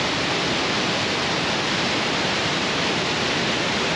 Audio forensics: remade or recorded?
recorded